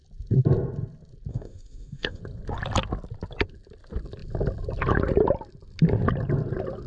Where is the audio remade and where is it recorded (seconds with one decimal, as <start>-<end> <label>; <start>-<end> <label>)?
0.0-1.3 recorded; 1.3-2.2 remade; 2.2-6.9 recorded